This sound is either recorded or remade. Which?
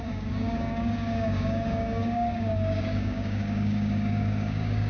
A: remade